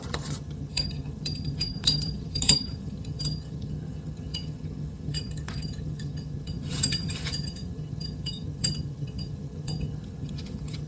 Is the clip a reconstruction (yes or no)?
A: yes